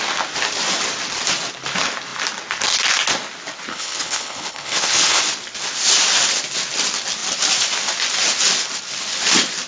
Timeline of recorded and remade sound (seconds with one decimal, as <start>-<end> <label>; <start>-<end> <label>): 0.0-3.7 recorded; 3.7-5.2 remade; 5.2-9.7 recorded